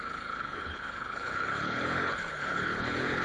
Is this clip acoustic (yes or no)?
no